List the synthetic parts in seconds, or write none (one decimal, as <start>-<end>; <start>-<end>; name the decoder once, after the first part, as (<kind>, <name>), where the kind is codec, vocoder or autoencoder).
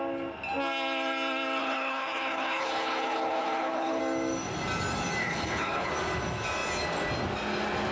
1.6-4.0 (codec, HILCodec); 5.2-5.9